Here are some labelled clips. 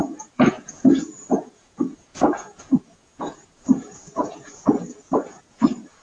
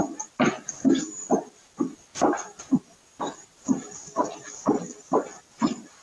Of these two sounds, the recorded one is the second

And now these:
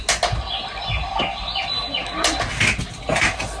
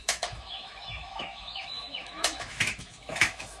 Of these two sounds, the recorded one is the first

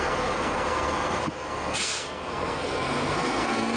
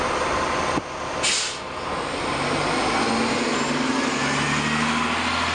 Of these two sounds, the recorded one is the second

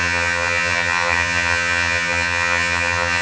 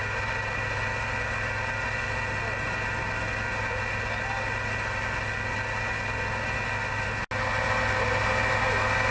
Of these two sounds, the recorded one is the second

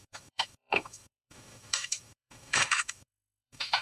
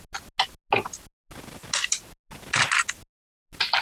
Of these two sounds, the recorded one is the second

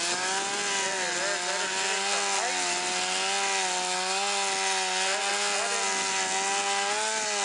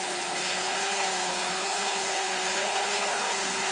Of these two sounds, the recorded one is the first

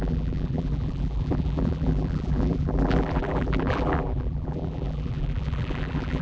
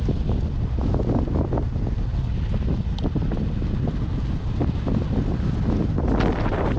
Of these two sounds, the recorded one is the second